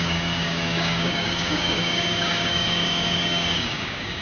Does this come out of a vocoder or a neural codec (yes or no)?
yes